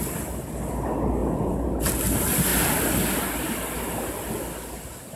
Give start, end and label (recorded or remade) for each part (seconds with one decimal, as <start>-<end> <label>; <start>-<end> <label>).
0.0-1.2 recorded; 1.2-1.7 remade; 1.7-5.2 recorded